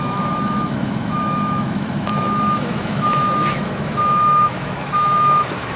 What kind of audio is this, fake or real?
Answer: fake